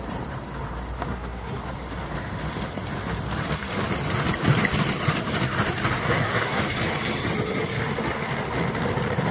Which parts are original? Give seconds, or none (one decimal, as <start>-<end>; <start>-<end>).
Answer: 0.0-1.1; 1.6-6.0; 6.6-9.3